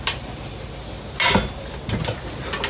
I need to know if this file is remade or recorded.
recorded